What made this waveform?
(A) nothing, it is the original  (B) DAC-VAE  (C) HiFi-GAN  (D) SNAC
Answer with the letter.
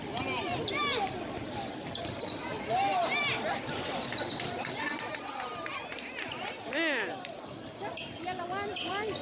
A